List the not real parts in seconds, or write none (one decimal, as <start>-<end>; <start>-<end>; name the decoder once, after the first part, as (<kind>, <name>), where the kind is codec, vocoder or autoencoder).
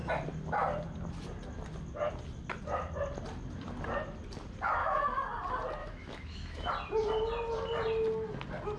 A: 4.8-5.3 (autoencoder, DAC-VAE); 5.8-6.7